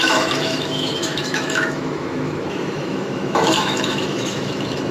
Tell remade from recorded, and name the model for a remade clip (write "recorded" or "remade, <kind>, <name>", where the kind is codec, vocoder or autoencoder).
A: remade, autoencoder, DAC-VAE